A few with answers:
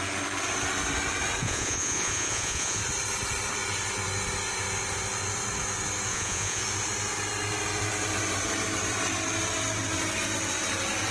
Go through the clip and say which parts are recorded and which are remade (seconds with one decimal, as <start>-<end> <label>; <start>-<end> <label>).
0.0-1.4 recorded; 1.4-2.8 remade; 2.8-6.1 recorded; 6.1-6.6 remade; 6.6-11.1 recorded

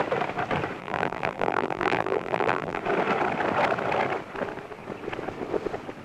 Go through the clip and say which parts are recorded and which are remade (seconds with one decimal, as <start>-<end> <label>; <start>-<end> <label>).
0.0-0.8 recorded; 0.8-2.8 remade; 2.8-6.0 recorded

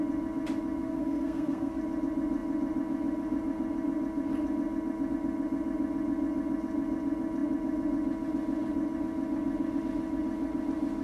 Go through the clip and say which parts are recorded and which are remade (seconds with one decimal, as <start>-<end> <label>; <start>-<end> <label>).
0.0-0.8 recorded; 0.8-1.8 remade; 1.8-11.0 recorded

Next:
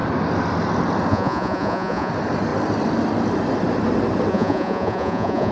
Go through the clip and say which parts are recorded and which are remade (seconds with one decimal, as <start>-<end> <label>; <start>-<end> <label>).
0.0-1.1 recorded; 1.1-2.1 remade; 2.1-4.3 recorded; 4.3-5.5 remade

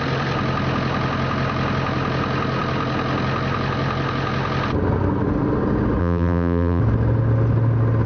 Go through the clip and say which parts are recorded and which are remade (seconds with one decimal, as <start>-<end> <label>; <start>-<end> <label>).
0.0-6.0 recorded; 6.0-6.8 remade; 6.8-8.1 recorded